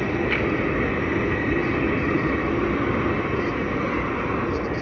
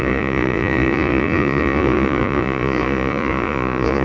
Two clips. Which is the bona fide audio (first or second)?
first